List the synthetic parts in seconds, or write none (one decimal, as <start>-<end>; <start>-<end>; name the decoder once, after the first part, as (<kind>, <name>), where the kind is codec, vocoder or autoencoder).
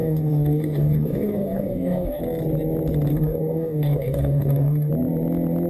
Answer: 0.0-2.2 (codec, DAC); 3.1-4.9